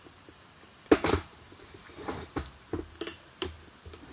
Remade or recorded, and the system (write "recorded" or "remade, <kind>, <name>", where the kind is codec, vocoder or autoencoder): recorded